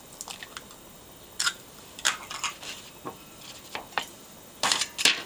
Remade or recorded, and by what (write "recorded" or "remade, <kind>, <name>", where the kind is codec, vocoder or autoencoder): remade, vocoder, BigVGAN v2